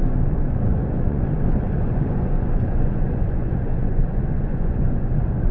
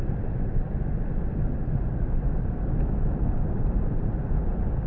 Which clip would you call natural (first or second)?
second